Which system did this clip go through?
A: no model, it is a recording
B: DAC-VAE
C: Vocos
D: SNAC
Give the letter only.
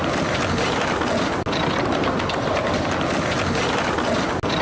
A